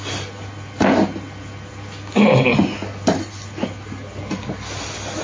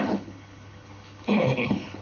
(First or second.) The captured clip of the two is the first